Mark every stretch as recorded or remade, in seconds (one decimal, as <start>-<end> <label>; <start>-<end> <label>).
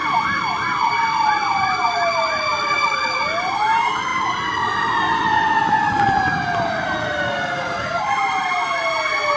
0.0-9.4 recorded